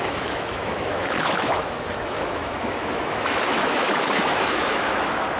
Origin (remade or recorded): remade